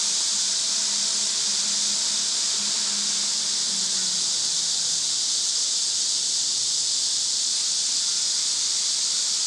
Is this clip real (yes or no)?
yes